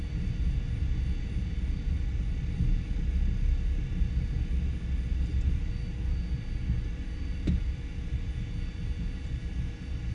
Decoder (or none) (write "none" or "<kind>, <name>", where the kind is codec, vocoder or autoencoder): none